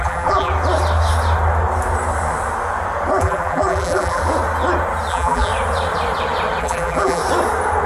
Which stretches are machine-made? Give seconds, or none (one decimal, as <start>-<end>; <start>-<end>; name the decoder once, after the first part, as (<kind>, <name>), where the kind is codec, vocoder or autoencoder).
0.0-0.5 (vocoder, BigVGAN v2); 3.2-4.2; 5.1-5.5; 6.6-7.2

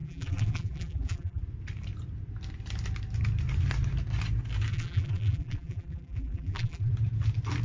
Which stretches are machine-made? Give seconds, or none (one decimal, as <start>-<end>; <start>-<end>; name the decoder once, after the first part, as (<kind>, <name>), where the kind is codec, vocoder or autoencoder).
0.0-1.4 (vocoder, BigVGAN v2); 4.7-6.9

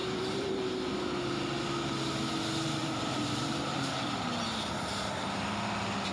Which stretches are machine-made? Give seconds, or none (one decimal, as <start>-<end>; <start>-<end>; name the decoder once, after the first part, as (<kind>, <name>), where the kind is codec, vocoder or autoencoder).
0.0-0.7 (vocoder, BigVGAN v2); 2.8-3.9